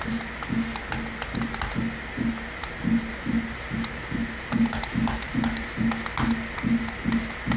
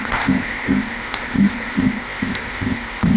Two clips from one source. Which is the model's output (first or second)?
second